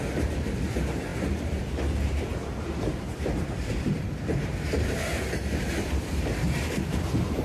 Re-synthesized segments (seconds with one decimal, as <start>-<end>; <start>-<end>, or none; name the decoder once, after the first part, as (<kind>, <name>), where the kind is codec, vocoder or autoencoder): 0.0-7.4 (vocoder, BigVGAN v2)